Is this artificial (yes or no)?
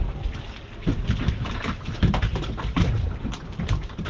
no